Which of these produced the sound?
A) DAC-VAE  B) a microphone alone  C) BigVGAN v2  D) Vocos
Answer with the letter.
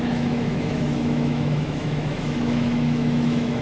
A